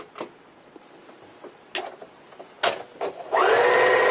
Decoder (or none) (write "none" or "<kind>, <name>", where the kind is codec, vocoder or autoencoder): none